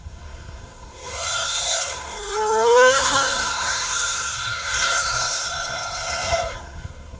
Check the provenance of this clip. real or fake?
fake